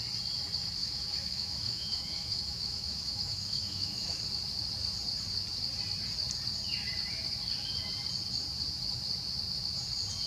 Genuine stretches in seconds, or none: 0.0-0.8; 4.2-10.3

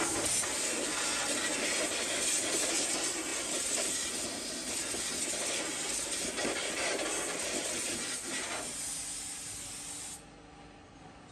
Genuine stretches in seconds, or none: 0.0-11.3

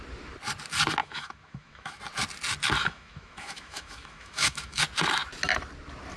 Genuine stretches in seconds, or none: 0.0-1.0; 2.0-2.8; 4.8-6.2